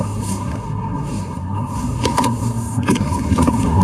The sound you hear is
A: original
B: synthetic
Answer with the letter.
B